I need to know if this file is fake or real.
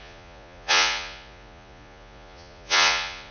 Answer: fake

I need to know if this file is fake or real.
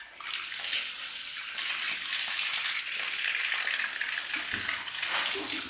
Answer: real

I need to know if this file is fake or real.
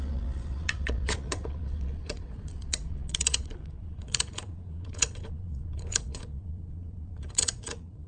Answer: fake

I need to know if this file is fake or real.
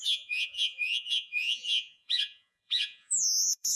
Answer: fake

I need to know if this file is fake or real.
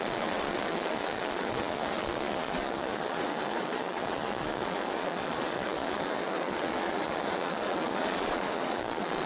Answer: fake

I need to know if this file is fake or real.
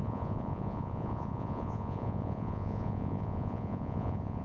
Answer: fake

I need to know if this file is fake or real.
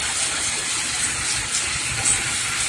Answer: real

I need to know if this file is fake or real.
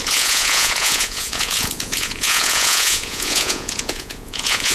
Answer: fake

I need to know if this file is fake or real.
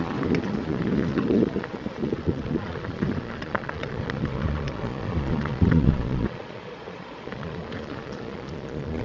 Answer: fake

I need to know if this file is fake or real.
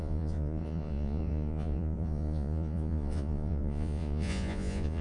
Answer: fake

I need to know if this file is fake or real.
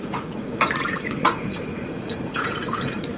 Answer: fake